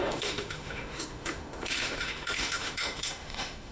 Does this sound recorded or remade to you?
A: remade